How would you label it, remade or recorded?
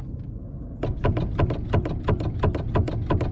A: recorded